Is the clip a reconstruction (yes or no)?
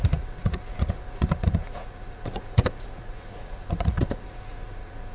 yes